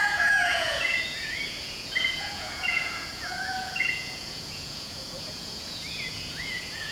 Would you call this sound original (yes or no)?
no